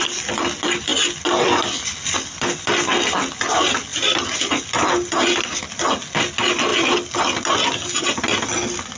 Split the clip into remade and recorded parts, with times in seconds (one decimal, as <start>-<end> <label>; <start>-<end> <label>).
0.0-9.0 recorded